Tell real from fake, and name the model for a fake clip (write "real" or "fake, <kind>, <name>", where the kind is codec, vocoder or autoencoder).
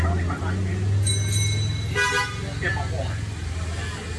real